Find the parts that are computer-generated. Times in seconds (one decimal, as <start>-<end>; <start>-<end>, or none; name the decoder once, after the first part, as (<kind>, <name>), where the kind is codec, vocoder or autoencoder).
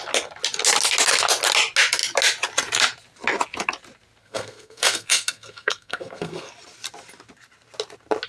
4.2-6.5 (codec, SNAC)